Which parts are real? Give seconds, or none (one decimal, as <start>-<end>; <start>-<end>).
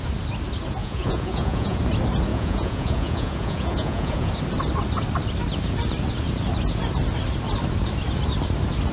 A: 0.0-0.8; 1.8-2.3; 4.3-8.9